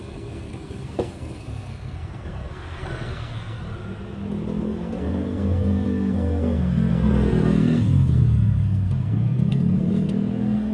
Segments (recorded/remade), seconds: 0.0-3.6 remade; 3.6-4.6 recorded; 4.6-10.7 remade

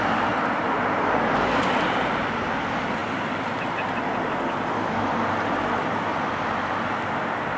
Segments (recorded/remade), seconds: 0.0-7.6 recorded

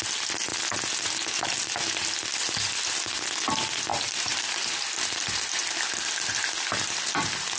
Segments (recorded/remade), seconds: 0.0-3.9 recorded; 3.9-7.6 remade

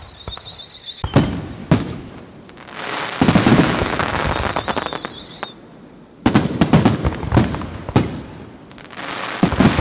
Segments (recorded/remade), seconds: 0.0-1.6 recorded; 1.6-2.1 remade; 2.1-3.5 recorded; 3.5-4.1 remade; 4.1-9.8 recorded

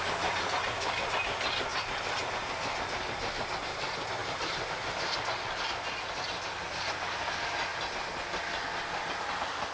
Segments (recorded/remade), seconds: 0.0-4.2 recorded; 4.2-5.2 remade; 5.2-9.7 recorded

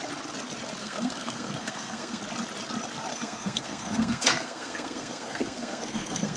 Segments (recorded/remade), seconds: 0.0-0.8 recorded; 0.8-2.2 remade; 2.2-3.1 recorded; 3.1-6.4 remade